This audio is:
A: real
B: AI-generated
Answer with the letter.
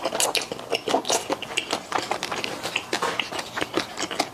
A